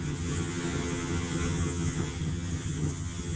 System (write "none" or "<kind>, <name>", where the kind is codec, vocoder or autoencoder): vocoder, HiFi-GAN